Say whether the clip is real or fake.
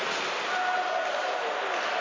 real